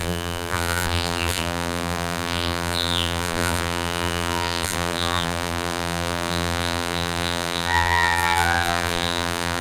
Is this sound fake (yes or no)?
yes